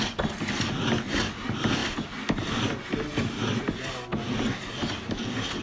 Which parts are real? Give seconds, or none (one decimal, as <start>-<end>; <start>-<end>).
0.0-5.6